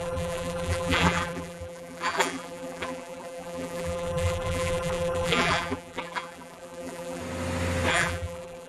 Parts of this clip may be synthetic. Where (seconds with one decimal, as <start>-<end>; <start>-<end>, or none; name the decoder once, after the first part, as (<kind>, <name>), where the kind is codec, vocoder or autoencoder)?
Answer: 0.0-7.2 (vocoder, BigVGAN v2); 7.9-8.7